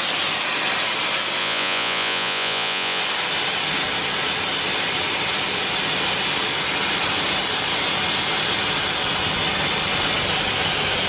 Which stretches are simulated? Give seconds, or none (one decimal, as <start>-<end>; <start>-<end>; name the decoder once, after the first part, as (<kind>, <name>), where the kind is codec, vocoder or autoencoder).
1.4-3.0 (vocoder, Vocos)